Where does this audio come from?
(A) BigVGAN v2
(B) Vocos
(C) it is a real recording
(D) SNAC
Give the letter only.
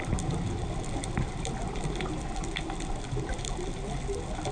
C